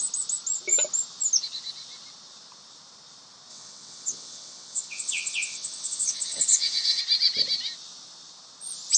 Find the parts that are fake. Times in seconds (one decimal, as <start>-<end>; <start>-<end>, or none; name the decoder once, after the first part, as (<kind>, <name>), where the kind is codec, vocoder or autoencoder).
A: 3.5-7.0 (vocoder, WaveNeXt)